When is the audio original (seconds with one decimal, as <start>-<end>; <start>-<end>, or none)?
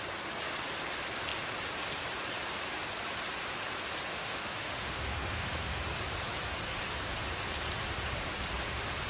0.0-4.1; 5.8-9.1